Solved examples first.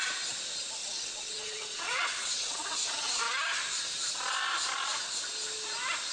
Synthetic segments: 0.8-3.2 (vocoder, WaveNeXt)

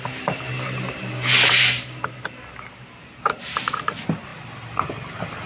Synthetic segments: none